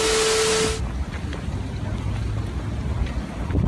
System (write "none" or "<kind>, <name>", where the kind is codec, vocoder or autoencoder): none